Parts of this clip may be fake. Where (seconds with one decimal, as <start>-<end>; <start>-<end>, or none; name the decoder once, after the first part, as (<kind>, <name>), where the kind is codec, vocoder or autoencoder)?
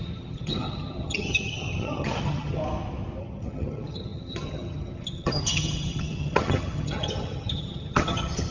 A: 0.0-2.6 (vocoder, HiFi-GAN); 3.2-8.5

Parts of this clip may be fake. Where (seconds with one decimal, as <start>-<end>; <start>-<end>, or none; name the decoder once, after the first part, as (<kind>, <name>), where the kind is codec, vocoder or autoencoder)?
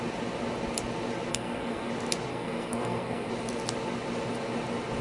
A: 1.3-1.9 (codec, SNAC); 2.3-3.3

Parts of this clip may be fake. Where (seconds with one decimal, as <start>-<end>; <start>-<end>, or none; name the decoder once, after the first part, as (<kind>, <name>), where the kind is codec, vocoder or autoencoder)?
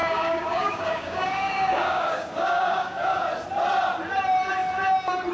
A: 0.0-3.2 (codec, DAC)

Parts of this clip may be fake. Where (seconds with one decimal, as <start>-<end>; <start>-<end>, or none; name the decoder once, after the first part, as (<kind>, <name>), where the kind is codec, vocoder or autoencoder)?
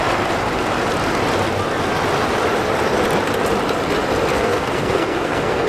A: 4.3-5.7 (codec, SNAC)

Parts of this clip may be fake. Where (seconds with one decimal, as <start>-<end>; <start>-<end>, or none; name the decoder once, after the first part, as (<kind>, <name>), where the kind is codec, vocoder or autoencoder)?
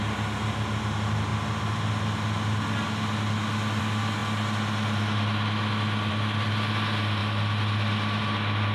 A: none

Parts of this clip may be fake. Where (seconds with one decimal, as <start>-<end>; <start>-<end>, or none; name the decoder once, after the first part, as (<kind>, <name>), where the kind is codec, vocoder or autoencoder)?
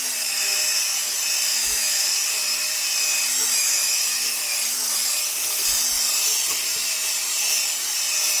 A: 1.5-2.1 (autoencoder, DAC-VAE); 3.6-4.4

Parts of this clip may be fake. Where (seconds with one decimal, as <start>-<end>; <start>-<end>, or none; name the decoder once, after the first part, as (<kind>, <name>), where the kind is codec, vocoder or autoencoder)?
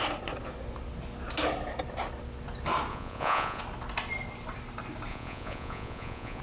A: 2.9-3.6 (vocoder, Vocos); 5.1-6.4